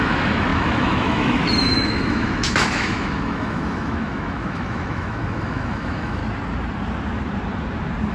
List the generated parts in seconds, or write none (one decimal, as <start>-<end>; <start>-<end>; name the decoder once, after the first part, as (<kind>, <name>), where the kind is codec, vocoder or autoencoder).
0.0-6.2 (autoencoder, DAC-VAE)